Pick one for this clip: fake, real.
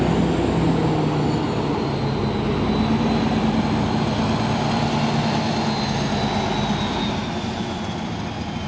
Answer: real